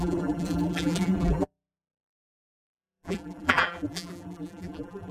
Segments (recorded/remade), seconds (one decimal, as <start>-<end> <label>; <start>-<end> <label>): 0.0-5.1 remade